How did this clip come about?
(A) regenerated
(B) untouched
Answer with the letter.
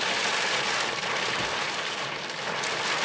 B